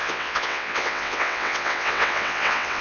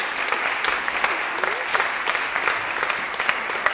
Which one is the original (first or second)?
second